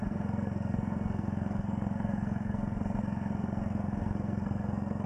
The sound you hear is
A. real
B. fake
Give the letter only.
B